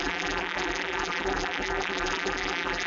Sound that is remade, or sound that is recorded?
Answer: remade